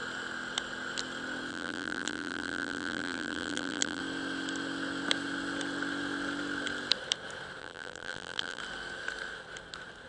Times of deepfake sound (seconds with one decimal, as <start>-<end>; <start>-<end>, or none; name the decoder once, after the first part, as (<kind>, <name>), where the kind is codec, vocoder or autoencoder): 1.5-4.0 (vocoder, BigVGAN v2); 7.6-8.6